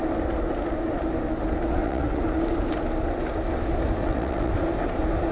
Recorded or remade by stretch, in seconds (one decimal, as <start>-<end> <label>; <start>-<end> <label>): 0.0-1.7 recorded; 1.7-2.2 remade; 2.2-4.0 recorded; 4.0-4.5 remade; 4.5-5.3 recorded